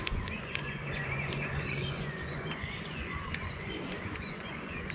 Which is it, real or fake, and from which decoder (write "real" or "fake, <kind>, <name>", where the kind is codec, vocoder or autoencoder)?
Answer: fake, vocoder, Vocos